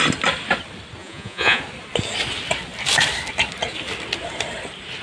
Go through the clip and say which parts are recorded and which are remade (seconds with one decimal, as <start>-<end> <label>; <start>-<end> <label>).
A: 0.0-1.0 recorded; 1.0-1.6 remade; 1.6-5.0 recorded